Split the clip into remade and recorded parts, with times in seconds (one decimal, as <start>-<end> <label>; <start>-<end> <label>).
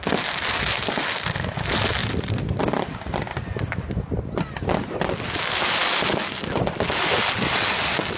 0.0-2.0 recorded; 2.0-2.6 remade; 2.6-8.2 recorded